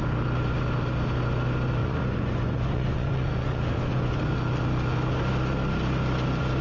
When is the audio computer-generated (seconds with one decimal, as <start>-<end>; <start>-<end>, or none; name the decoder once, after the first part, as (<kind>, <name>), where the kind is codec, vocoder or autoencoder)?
1.8-4.2 (vocoder, Vocos)